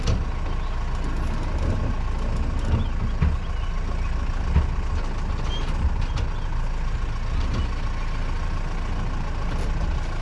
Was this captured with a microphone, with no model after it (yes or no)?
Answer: yes